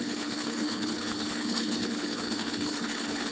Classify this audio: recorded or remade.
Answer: remade